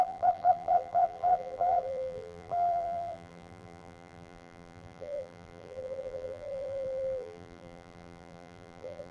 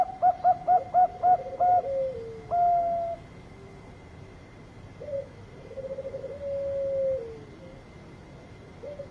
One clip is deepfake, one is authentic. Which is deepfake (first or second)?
first